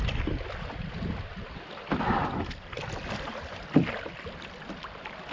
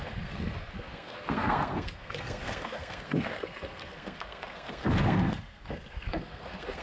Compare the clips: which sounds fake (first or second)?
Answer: second